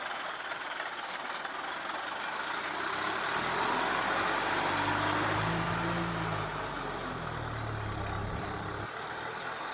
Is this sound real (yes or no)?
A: yes